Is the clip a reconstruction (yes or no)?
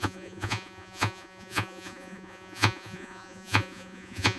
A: yes